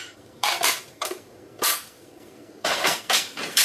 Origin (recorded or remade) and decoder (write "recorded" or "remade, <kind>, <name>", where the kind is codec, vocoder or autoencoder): remade, codec, SNAC